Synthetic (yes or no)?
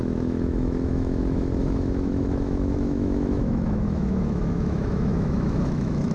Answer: yes